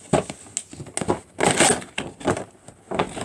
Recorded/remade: recorded